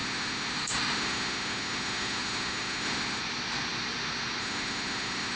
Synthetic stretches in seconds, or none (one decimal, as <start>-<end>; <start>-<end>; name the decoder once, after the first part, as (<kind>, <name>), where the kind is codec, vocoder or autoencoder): 0.0-3.2 (autoencoder, DAC-VAE); 4.4-5.4